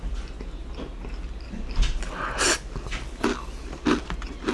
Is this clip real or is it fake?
real